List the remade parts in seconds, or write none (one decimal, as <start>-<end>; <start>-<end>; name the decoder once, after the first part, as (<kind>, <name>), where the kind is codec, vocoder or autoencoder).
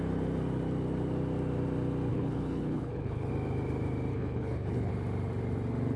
2.1-3.3 (codec, HILCodec); 4.1-4.9